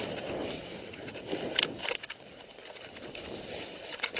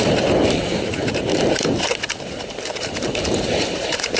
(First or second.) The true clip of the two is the first